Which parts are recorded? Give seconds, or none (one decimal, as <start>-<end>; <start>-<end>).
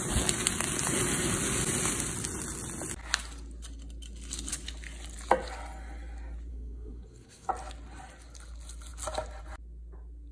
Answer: 0.0-6.5; 7.5-10.3